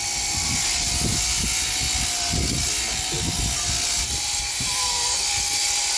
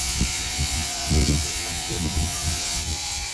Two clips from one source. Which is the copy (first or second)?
second